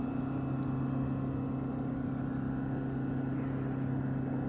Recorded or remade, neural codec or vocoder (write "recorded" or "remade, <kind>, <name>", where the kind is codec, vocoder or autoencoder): recorded